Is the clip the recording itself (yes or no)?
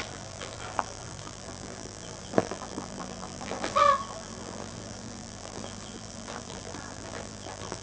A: no